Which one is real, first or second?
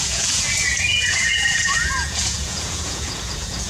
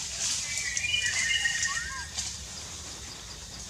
second